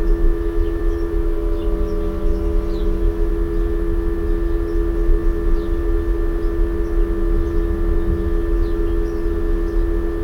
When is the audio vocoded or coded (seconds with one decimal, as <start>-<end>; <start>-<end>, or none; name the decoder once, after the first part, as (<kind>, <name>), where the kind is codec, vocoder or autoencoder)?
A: 0.0-0.8 (autoencoder, DAC-VAE); 2.8-3.3

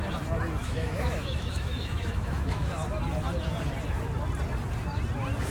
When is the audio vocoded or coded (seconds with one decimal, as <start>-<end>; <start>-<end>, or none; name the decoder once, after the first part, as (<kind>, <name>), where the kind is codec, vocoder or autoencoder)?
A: 0.6-2.7 (autoencoder, DAC-VAE)

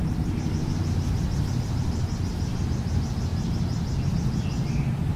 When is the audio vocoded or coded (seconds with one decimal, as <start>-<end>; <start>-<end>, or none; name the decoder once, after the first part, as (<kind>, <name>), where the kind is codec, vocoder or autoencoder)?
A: none